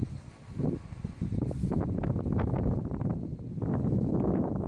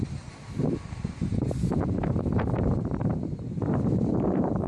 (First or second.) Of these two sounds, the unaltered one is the first